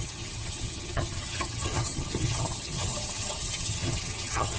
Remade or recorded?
remade